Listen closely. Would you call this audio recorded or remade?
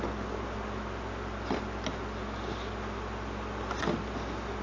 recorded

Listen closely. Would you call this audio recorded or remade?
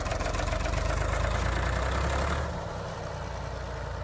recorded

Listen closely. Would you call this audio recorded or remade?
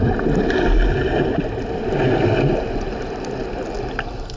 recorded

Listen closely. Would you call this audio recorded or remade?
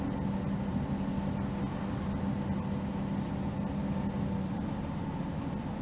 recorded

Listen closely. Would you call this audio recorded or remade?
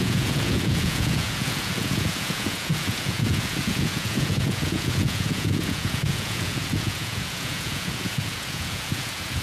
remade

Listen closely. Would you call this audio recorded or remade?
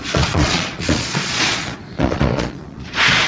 remade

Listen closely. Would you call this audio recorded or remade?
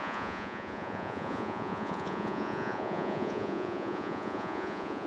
remade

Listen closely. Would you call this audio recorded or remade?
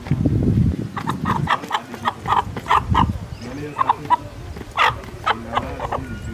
recorded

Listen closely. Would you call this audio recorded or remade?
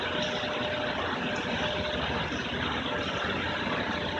recorded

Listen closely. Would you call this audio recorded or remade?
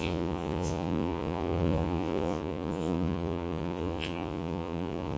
remade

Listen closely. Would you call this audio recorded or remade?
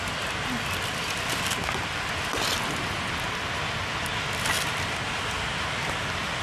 recorded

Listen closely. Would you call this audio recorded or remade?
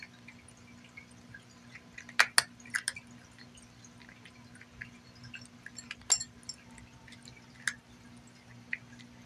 recorded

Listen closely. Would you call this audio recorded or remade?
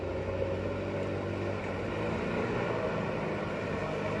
recorded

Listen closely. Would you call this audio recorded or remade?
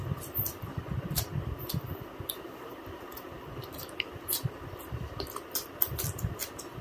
recorded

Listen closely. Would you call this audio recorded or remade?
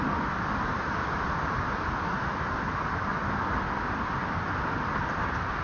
recorded